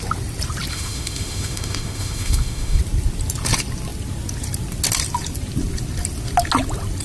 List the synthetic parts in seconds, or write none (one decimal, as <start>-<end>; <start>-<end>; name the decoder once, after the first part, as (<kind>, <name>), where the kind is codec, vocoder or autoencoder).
0.7-2.8 (autoencoder, DAC-VAE)